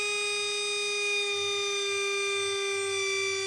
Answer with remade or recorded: recorded